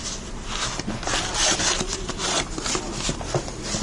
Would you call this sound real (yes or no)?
yes